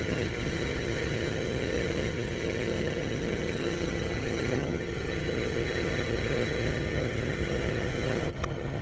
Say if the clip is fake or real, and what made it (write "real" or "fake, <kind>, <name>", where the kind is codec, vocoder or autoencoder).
fake, vocoder, HiFi-GAN